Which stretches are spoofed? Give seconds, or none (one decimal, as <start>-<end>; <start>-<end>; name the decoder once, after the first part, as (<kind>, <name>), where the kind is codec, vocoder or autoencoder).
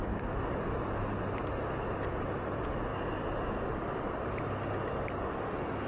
none